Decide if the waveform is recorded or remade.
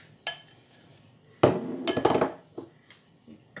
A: recorded